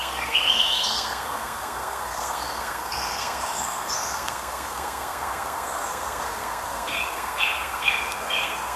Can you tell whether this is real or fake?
fake